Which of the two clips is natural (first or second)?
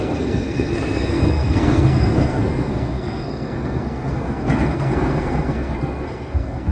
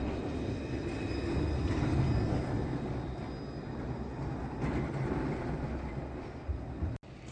second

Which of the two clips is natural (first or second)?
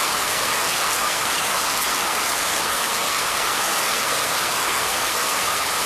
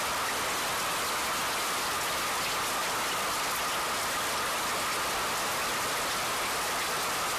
second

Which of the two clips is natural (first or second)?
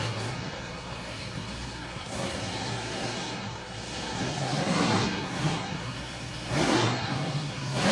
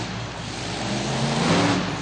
second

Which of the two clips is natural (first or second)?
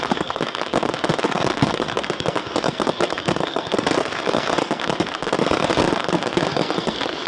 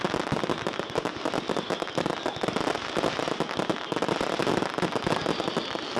second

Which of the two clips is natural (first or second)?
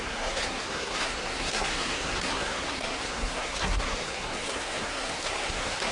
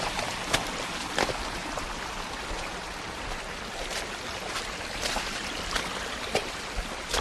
second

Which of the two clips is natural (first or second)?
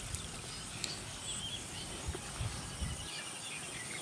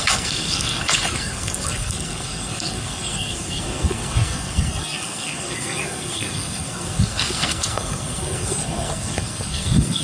first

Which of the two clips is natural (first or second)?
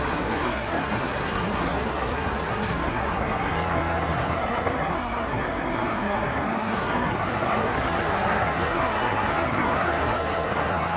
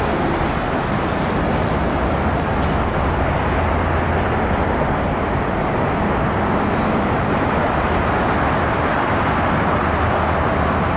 second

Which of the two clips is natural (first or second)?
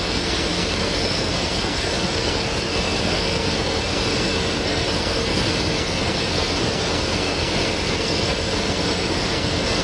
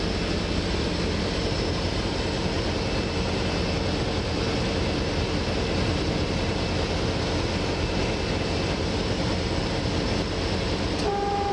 second